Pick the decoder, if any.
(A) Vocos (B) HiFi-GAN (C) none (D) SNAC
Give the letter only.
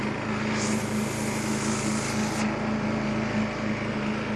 C